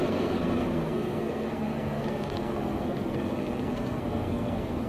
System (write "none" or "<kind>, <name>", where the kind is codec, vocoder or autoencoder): codec, SNAC